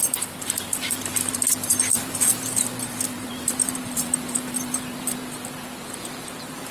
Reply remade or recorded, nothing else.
remade